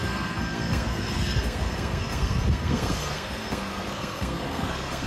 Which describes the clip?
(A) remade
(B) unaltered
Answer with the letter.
A